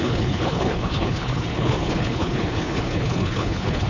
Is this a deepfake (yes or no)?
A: yes